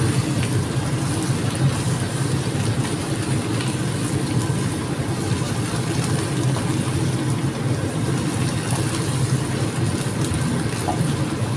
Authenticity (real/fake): real